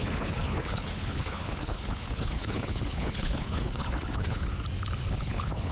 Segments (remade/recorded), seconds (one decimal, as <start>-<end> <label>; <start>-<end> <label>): 0.0-4.5 remade; 4.5-5.1 recorded; 5.1-5.7 remade